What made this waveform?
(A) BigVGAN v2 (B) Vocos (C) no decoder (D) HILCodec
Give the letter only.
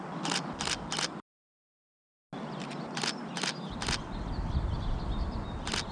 C